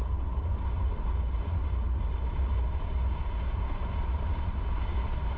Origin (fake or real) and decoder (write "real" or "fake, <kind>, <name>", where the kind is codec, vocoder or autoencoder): real